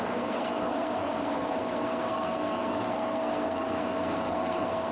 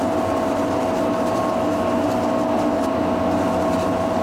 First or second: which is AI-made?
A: first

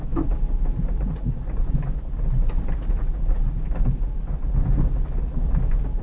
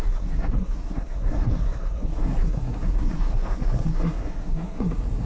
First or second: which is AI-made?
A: second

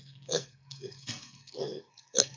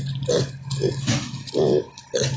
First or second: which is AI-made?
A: first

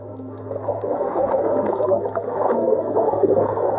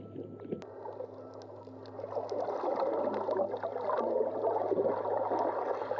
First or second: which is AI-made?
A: first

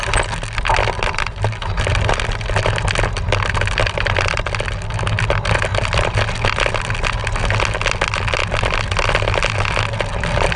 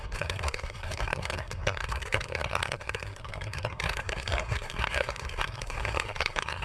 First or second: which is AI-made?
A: second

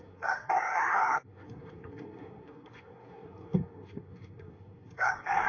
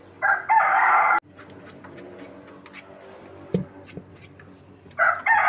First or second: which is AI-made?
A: first